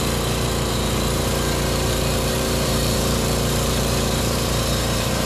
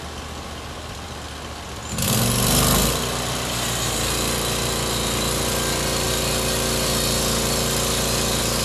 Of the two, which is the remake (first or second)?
first